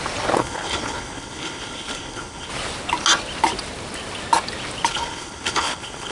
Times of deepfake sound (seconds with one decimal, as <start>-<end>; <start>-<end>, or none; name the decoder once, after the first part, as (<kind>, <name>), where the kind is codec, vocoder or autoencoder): 0.4-2.5 (codec, HILCodec); 4.9-6.1